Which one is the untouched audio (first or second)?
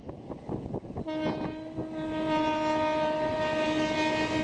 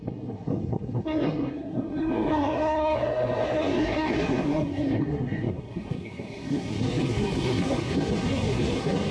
first